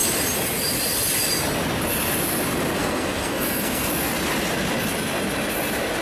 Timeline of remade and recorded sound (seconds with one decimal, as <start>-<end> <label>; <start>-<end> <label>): 0.0-2.8 recorded; 2.8-3.9 remade; 3.9-6.0 recorded